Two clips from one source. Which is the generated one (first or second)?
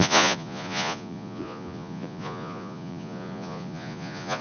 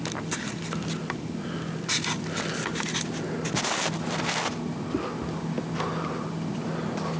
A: first